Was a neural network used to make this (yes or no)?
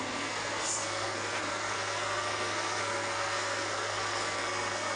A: yes